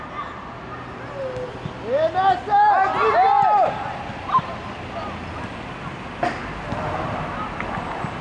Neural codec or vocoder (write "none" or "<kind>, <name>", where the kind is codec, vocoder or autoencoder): none